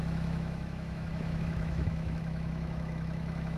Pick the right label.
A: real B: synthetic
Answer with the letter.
B